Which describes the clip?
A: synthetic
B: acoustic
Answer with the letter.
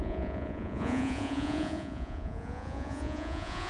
A